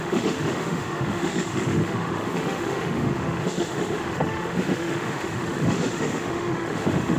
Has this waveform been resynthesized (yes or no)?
yes